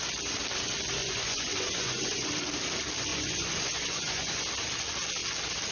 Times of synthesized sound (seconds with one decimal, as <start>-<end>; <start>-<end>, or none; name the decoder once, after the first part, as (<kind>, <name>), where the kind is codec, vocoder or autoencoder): 1.0-2.3 (vocoder, Vocos); 3.1-4.4